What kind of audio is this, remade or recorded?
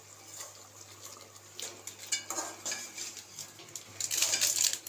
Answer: recorded